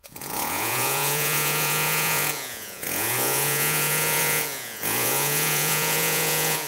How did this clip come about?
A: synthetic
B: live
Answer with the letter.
A